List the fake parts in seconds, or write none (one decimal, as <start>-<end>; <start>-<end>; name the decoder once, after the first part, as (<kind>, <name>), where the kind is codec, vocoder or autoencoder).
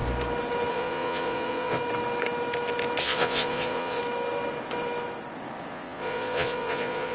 0.7-1.8 (vocoder, Vocos); 3.0-4.0; 5.7-7.1